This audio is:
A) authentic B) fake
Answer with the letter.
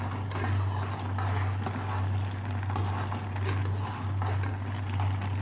A